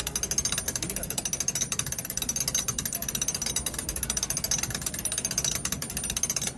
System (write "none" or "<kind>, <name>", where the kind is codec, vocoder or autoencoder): none